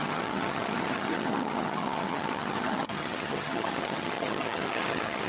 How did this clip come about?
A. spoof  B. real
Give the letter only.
A